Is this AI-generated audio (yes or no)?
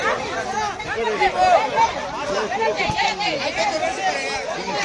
no